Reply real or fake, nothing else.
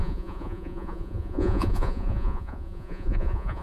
fake